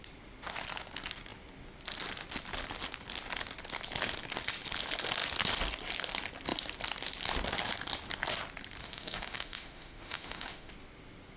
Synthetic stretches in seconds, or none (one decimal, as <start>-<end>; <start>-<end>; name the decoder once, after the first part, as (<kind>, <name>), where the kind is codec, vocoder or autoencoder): 8.8-10.7 (autoencoder, DAC-VAE)